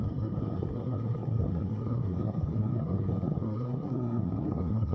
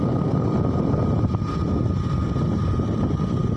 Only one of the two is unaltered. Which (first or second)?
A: second